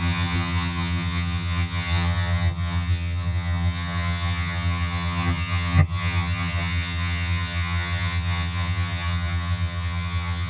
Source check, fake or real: fake